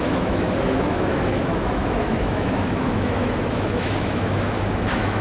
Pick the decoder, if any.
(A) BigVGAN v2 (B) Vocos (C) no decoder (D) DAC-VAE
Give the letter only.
D